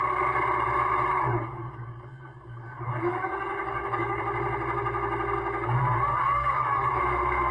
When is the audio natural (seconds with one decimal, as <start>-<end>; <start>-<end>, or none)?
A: 0.0-1.1; 4.2-6.1; 7.0-7.5